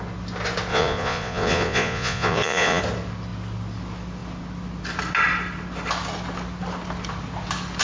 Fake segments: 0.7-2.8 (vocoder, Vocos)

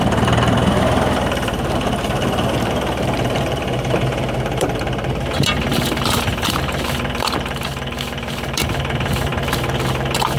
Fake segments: 0.0-9.3 (vocoder, BigVGAN v2); 9.9-10.4

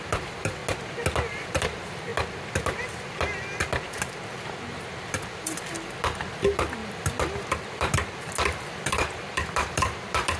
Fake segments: 0.0-0.6 (vocoder, BigVGAN v2); 1.3-2.1; 5.0-10.4

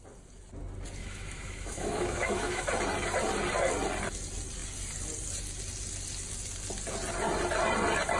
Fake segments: 1.0-2.7 (autoencoder, DAC-VAE)

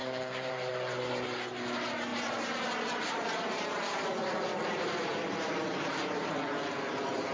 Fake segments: 0.0-0.7 (vocoder, BigVGAN v2); 2.1-6.3

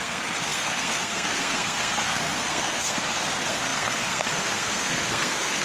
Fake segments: 0.0-5.6 (codec, SNAC)

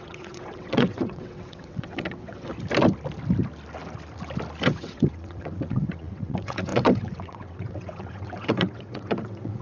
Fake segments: 0.0-2.5 (vocoder, WaveNeXt); 4.6-9.6